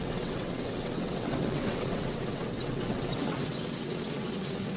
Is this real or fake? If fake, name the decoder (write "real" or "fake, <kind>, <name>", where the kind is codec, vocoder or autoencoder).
fake, vocoder, WaveNeXt